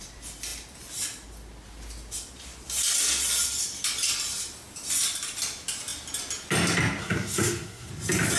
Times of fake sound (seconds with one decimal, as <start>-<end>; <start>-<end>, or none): 7.0-7.9